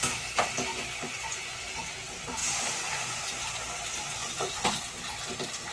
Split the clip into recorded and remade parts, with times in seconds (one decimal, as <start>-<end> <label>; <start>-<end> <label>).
0.0-0.7 recorded; 0.7-1.6 remade; 1.6-2.4 recorded; 2.4-3.4 remade; 3.4-4.2 recorded; 4.2-4.8 remade; 4.8-5.7 recorded